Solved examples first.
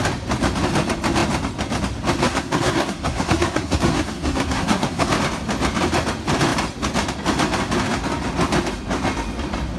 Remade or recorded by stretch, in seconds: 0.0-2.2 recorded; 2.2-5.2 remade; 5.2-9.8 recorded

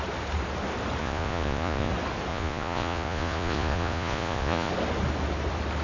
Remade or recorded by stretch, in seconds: 0.0-1.0 recorded; 1.0-1.9 remade; 1.9-2.3 recorded; 2.3-4.7 remade; 4.7-5.8 recorded

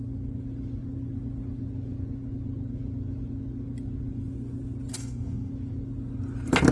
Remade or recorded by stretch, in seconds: 0.0-4.9 recorded; 4.9-5.5 remade; 5.5-6.7 recorded

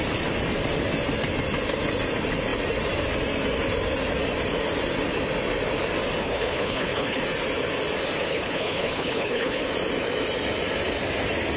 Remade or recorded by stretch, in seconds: 0.0-6.2 recorded; 6.2-7.2 remade; 7.2-8.3 recorded; 8.3-9.6 remade; 9.6-11.6 recorded

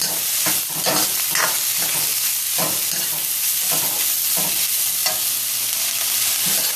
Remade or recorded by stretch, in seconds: 0.0-6.8 recorded

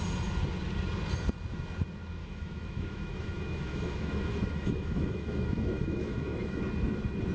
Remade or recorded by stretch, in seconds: 0.0-2.2 recorded; 2.2-6.6 remade; 6.6-7.3 recorded